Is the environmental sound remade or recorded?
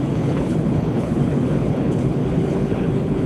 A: remade